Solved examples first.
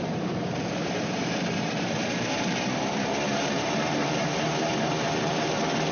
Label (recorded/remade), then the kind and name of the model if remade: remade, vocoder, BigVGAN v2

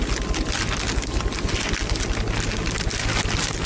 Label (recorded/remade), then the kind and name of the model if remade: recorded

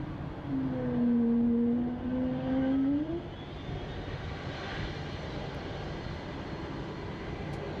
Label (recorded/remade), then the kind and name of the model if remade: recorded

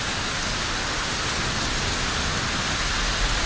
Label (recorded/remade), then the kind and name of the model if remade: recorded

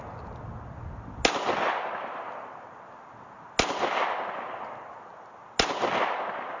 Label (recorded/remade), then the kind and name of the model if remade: recorded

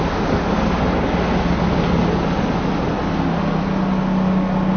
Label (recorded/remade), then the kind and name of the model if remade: recorded